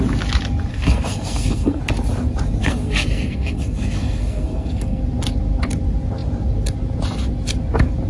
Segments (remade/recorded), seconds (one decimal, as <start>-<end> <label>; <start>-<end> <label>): 0.0-0.7 recorded; 0.7-1.8 remade; 1.8-2.6 recorded; 2.6-5.0 remade; 5.0-8.1 recorded